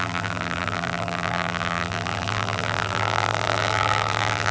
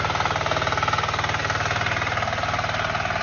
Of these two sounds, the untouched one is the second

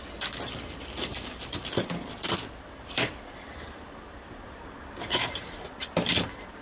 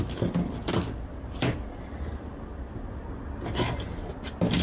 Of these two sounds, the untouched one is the second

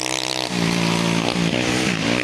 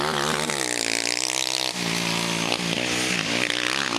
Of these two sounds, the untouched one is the second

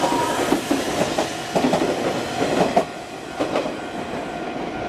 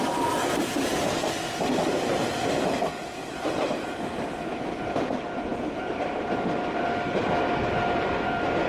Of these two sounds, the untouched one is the first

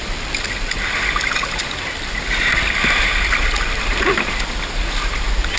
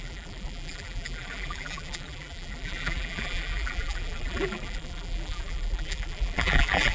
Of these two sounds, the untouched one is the first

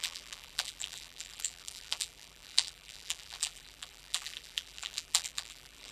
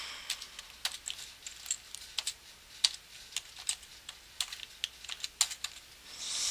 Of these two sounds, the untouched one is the second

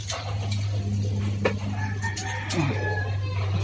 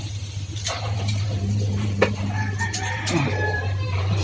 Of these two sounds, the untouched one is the first